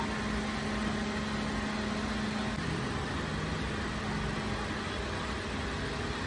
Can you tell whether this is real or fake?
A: real